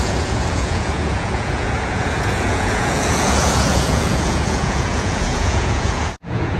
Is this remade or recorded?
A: remade